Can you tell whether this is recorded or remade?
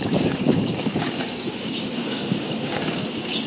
remade